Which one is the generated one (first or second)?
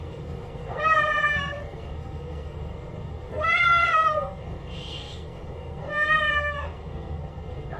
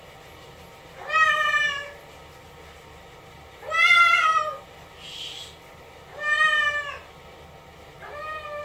first